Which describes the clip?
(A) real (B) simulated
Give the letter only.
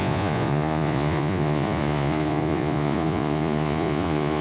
B